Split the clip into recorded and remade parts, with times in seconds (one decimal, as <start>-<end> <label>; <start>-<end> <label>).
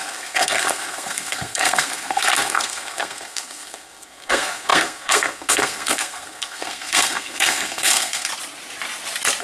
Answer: 0.0-8.3 remade; 8.3-9.4 recorded